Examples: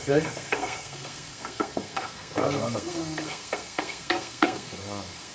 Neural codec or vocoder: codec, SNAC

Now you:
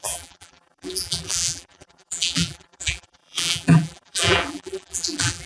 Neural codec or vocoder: vocoder, BigVGAN v2